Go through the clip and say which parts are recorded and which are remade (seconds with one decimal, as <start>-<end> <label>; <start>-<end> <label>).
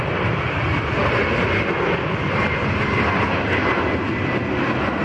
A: 0.0-5.0 recorded